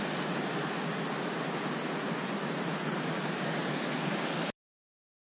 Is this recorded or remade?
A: recorded